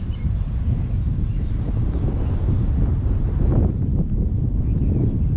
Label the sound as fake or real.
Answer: fake